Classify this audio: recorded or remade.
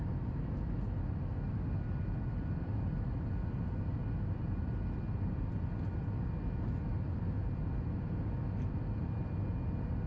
recorded